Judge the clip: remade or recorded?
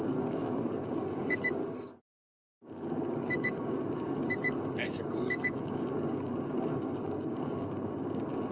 remade